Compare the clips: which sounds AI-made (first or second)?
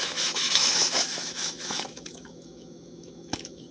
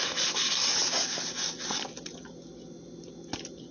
first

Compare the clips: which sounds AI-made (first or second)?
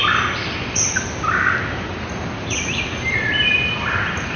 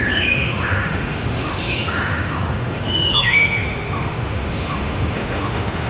second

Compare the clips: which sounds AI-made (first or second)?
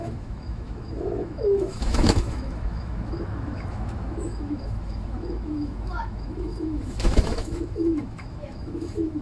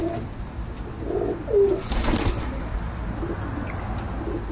first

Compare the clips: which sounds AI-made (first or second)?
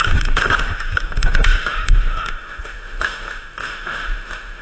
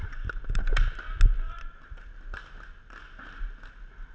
first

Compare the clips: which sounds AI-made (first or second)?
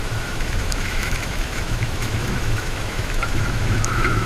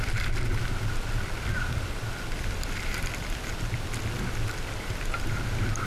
first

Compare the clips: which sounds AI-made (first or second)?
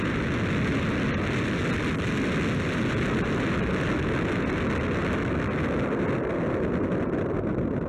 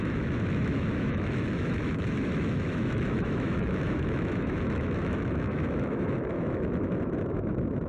second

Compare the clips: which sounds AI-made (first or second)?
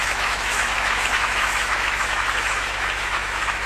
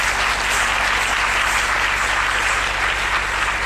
first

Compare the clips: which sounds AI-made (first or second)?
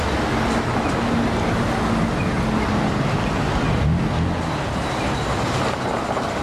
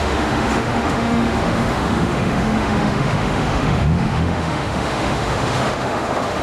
second